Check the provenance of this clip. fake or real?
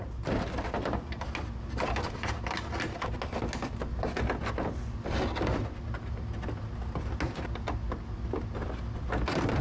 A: real